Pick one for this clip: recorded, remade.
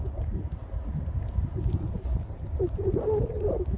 recorded